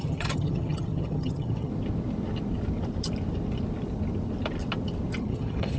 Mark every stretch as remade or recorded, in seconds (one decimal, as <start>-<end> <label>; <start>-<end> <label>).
0.0-1.7 remade; 1.7-5.2 recorded; 5.2-5.8 remade